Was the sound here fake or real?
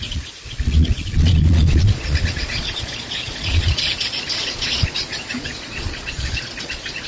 fake